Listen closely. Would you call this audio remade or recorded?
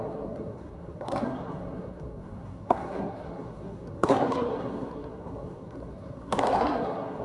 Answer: remade